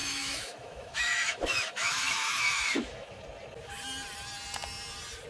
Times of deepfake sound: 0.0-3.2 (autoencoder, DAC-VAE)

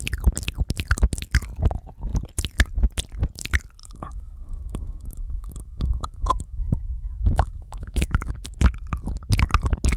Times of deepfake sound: 3.8-8.3 (autoencoder, DAC-VAE)

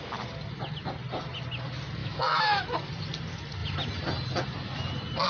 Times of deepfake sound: 2.0-2.6 (autoencoder, DAC-VAE)

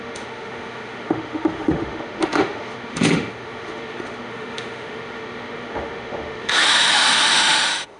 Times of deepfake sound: 0.0-8.0 (autoencoder, DAC-VAE)

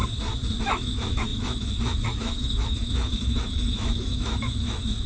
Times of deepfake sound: 0.6-5.1 (autoencoder, DAC-VAE)